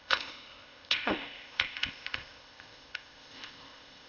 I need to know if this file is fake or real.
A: fake